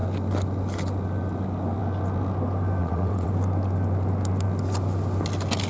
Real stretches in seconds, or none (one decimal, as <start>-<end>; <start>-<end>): 0.0-2.8; 3.3-5.7